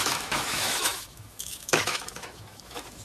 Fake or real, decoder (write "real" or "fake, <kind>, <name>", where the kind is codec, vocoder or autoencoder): fake, autoencoder, DAC-VAE